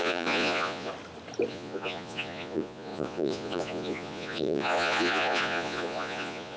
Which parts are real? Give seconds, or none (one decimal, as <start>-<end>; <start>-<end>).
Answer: 0.9-1.5

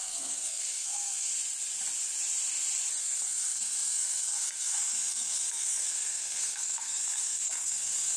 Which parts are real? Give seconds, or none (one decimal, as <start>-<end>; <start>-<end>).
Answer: 1.3-3.0

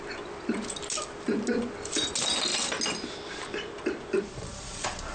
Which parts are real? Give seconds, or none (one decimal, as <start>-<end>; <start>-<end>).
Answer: 0.0-4.4

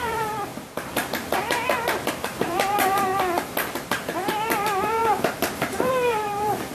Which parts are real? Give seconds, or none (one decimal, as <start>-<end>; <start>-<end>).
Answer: 0.5-2.1; 3.1-3.9

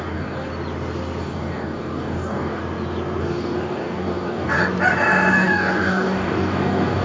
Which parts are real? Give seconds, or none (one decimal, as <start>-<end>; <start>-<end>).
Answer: 0.5-1.2; 2.6-3.2; 4.6-5.3